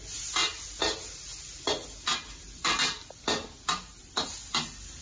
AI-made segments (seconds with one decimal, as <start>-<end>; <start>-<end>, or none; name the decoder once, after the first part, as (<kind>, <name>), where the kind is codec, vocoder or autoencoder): none